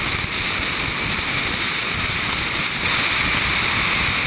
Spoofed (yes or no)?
no